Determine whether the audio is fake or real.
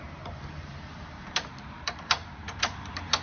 fake